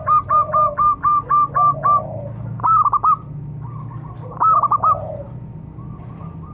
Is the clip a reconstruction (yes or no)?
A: no